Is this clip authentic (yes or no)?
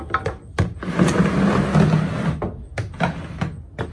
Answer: yes